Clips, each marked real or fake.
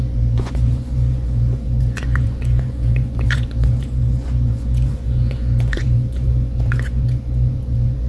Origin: fake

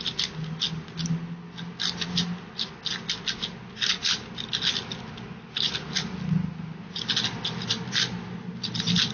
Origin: real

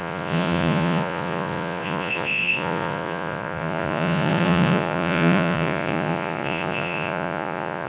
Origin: fake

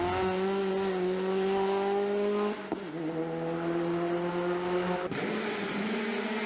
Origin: real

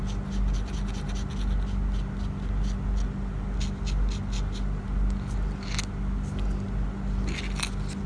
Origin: real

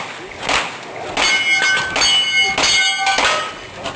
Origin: real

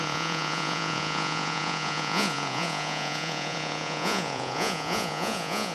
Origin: fake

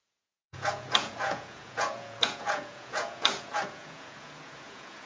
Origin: fake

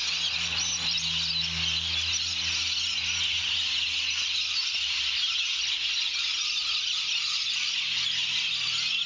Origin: real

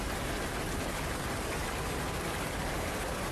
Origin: real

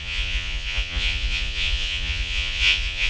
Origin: fake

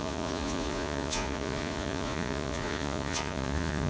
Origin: fake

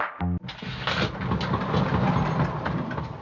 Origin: real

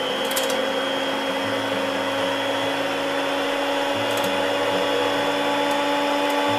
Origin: real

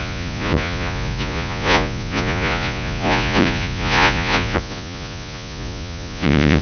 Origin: fake